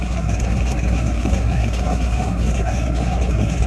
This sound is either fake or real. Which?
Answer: fake